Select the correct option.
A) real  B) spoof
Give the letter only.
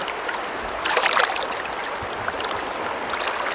A